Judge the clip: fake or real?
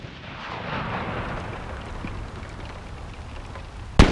real